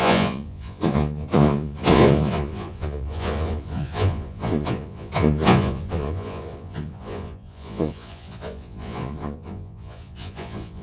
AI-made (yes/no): yes